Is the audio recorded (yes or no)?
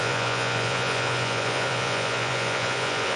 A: no